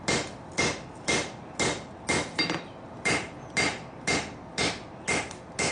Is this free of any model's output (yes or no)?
yes